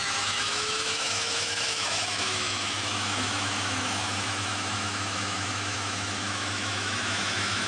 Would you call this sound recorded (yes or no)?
no